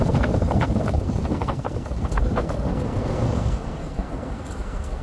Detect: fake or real fake